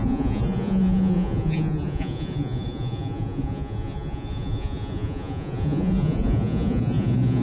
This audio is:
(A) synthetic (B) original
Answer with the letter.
A